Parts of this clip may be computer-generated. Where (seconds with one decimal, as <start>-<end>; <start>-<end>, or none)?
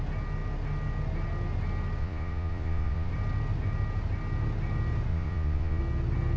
2.0-3.1; 5.1-5.8